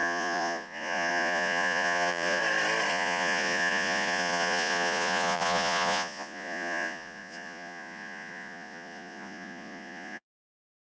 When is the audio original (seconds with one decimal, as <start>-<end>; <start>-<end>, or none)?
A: 2.4-2.9